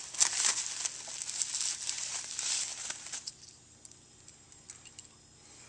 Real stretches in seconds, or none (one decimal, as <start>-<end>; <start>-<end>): 0.0-5.7